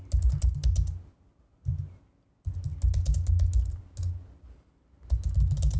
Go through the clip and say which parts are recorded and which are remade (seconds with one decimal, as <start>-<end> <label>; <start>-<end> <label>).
0.0-5.8 recorded